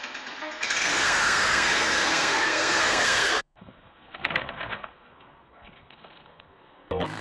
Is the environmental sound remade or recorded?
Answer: remade